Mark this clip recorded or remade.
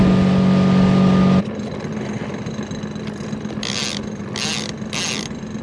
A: recorded